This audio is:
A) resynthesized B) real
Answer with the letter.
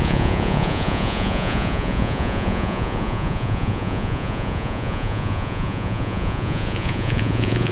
A